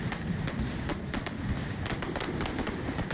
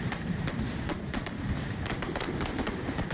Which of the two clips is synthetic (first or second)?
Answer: second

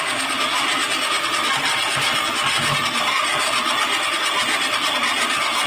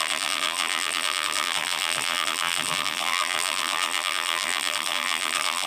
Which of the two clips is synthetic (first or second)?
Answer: second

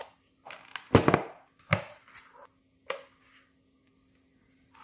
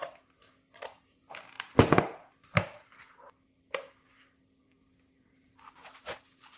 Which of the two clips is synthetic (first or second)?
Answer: second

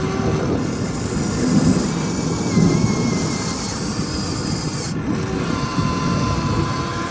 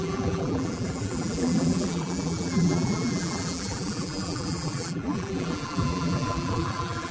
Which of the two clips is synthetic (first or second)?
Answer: second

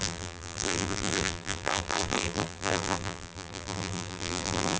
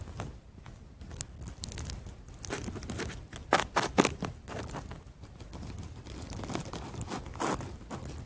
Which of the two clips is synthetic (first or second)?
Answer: first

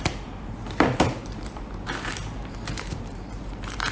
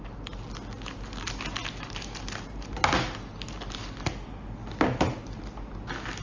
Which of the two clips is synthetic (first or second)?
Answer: first